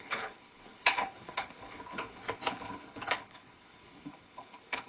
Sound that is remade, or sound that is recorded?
remade